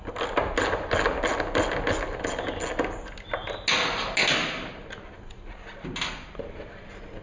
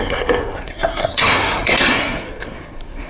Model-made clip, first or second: second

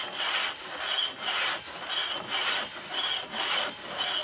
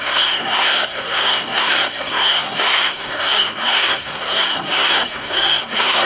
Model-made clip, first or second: second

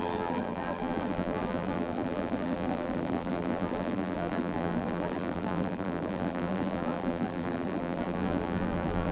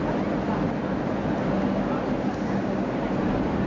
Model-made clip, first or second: first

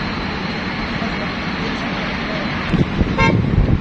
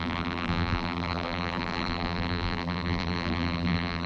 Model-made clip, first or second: second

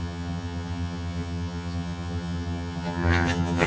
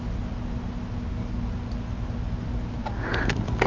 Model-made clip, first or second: first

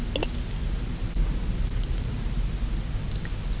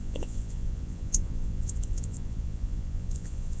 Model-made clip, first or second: second